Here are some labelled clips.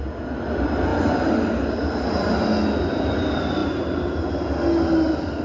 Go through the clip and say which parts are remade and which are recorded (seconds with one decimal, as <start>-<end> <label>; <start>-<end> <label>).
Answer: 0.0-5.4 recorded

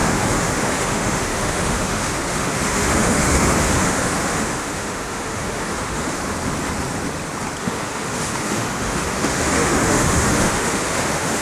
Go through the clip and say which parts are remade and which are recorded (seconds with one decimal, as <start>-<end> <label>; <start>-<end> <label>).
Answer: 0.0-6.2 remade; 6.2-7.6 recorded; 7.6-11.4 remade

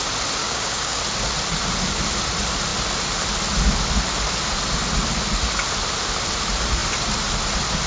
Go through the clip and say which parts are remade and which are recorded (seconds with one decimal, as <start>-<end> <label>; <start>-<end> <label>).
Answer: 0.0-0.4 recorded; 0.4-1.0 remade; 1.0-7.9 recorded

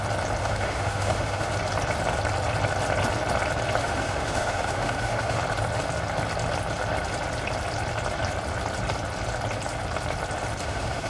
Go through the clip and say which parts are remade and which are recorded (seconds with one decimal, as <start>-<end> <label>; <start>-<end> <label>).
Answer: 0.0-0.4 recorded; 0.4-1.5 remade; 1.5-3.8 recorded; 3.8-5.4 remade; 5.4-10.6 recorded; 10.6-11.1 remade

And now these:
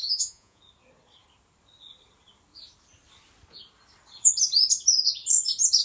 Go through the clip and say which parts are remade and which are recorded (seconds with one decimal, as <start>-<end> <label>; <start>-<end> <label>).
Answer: 0.0-0.6 remade; 0.6-5.8 recorded

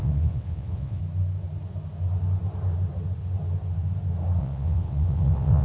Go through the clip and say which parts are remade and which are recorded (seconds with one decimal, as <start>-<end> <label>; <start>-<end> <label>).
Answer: 0.0-1.0 remade; 1.0-4.4 recorded; 4.4-5.6 remade